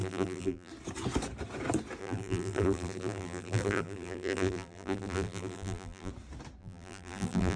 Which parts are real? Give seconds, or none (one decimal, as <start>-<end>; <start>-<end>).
0.7-2.0; 6.1-6.6